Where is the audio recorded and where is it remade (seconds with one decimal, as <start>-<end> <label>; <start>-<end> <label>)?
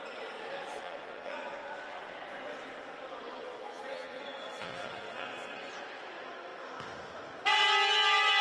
0.0-0.7 recorded; 0.7-2.0 remade; 2.0-3.3 recorded; 3.3-5.7 remade; 5.7-8.4 recorded